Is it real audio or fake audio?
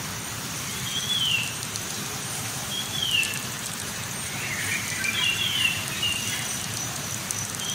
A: fake